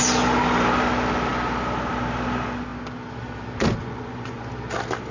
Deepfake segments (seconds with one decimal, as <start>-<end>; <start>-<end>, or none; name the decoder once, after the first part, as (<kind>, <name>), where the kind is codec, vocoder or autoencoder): 3.8-4.5 (vocoder, Vocos)